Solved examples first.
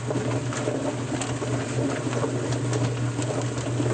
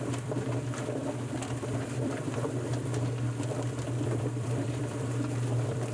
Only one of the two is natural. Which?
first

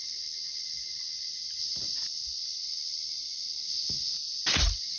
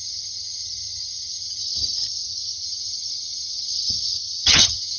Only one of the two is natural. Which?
first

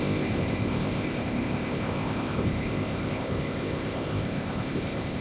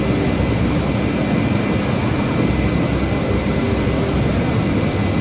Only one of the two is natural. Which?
second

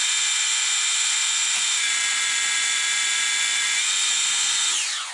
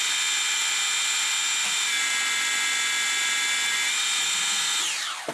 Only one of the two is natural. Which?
second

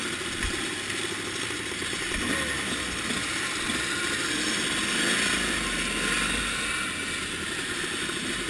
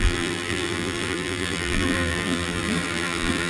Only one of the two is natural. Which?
first